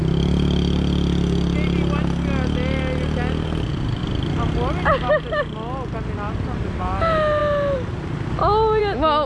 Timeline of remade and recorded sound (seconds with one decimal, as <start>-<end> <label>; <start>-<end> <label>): 0.0-9.3 recorded